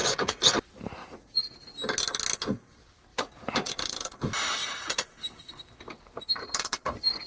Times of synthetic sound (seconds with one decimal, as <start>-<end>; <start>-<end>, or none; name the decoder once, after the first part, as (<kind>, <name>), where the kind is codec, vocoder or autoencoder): 0.0-0.5 (vocoder, Vocos); 1.0-1.7; 3.1-3.7; 4.6-5.2